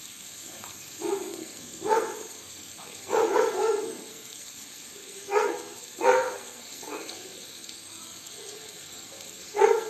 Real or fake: fake